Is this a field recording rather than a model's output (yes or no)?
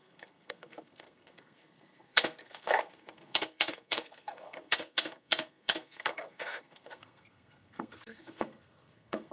no